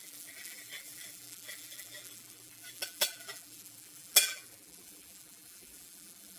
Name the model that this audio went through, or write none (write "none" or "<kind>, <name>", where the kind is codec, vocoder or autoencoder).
vocoder, BigVGAN v2